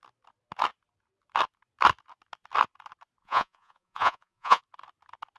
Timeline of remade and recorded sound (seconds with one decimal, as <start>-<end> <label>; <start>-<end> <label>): 0.0-3.2 recorded; 3.2-4.6 remade; 4.6-5.4 recorded